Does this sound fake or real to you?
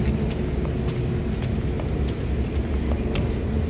real